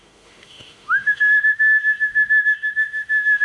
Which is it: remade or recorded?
remade